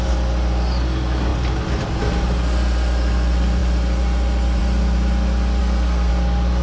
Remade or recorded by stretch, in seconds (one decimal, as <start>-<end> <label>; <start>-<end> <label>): 0.0-5.6 recorded; 5.6-6.1 remade; 6.1-6.6 recorded